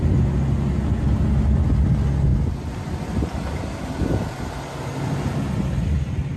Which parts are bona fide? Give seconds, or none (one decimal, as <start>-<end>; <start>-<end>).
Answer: 0.0-6.4